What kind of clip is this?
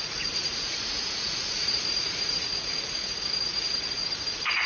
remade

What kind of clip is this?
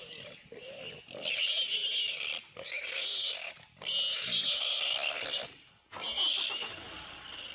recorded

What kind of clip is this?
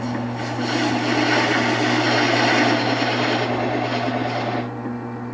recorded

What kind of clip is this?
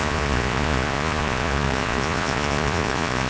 remade